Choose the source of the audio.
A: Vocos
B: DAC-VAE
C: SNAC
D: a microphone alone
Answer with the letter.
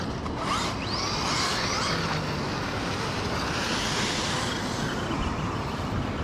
D